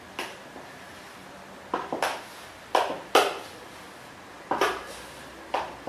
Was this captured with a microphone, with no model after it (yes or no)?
yes